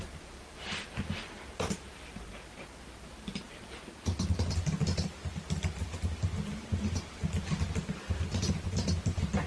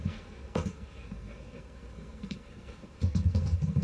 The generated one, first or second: second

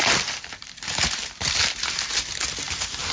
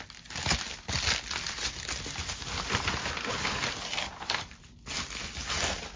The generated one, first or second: first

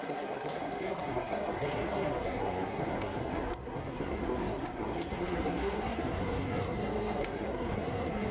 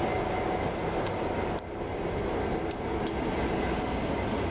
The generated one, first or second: first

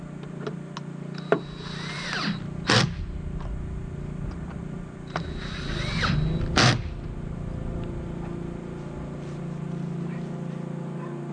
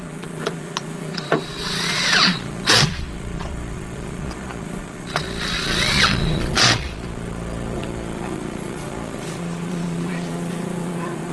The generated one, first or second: second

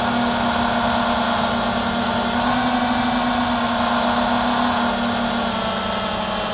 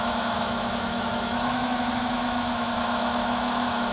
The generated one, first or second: second